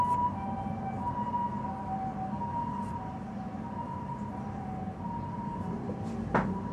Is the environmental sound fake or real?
real